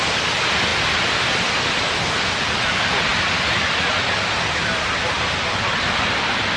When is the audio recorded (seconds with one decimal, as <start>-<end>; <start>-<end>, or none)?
0.0-6.6